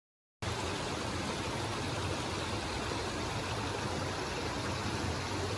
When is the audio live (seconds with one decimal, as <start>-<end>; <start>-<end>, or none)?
0.0-5.6